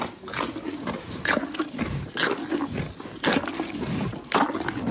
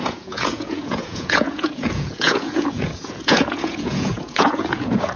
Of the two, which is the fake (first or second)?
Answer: second